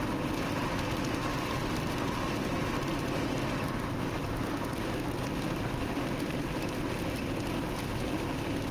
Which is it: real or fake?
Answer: real